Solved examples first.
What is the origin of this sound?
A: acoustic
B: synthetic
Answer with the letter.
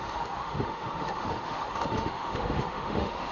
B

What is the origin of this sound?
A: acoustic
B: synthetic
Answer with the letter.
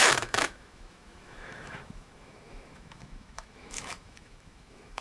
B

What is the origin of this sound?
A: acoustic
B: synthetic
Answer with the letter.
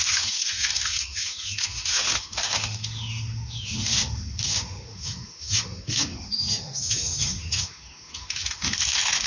B